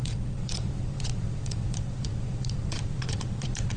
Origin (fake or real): fake